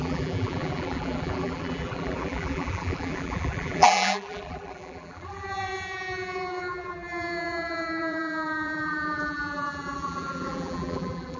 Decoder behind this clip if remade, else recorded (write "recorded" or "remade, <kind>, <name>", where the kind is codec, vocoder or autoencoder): remade, vocoder, BigVGAN v2